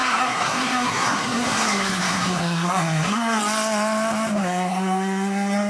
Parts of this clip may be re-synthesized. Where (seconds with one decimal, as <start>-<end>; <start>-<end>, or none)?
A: 0.0-3.4; 4.4-5.7